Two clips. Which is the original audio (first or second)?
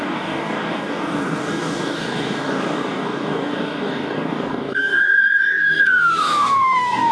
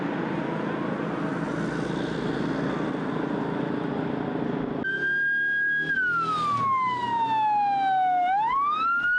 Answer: second